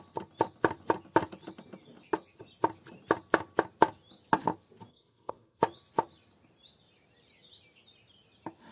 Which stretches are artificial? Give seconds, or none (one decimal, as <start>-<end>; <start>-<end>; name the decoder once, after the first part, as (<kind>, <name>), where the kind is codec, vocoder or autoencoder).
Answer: 4.9-5.6 (codec, SNAC)